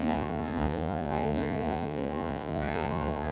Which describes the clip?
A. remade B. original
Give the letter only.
A